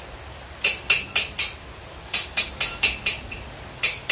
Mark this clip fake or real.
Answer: real